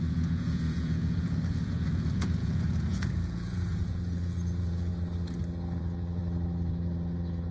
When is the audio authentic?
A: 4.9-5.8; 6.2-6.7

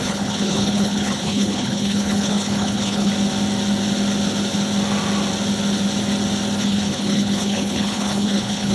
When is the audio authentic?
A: 3.1-6.6